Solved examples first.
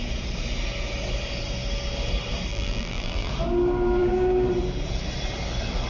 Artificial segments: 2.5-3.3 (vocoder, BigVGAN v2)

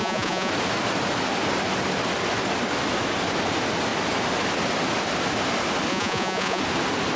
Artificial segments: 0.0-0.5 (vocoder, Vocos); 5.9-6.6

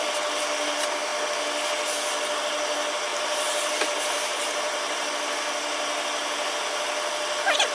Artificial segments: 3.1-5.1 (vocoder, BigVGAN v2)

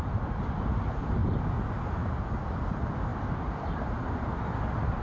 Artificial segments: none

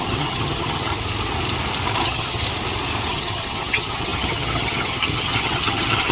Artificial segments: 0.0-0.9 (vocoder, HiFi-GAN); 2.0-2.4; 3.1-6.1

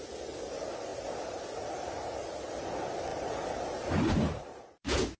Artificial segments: 3.1-4.6 (vocoder, BigVGAN v2)

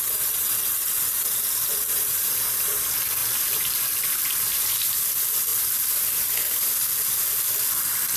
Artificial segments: 3.2-5.1 (vocoder, BigVGAN v2); 5.5-6.1

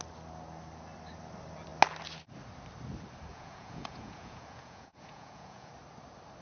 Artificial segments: 3.3-5.7 (vocoder, Vocos)